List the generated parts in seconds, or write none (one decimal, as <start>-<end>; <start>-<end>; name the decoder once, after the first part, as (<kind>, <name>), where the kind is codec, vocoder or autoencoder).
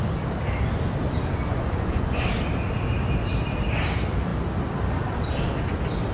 1.5-2.3 (vocoder, Vocos)